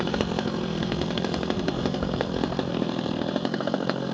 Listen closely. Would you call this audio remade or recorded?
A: remade